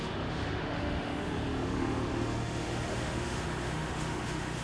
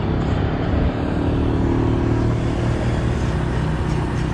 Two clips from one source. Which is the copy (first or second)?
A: first